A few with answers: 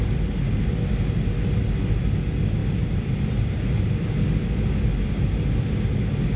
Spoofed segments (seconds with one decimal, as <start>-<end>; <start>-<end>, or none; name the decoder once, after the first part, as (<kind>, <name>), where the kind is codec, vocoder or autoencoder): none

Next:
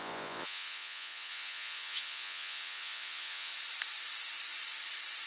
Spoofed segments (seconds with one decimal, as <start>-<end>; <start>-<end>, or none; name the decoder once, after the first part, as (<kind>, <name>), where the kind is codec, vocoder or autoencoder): 0.0-3.5 (vocoder, Vocos)

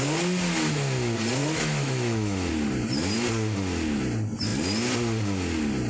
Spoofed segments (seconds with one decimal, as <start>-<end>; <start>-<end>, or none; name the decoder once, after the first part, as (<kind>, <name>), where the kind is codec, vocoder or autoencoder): 1.4-2.5 (autoencoder, DAC-VAE)

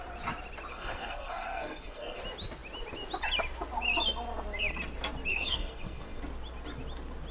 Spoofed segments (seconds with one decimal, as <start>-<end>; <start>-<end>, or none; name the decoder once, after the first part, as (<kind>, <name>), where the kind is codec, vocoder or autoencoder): 0.7-2.2 (codec, SNAC); 5.3-6.2